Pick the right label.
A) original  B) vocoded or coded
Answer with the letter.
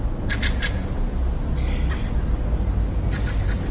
A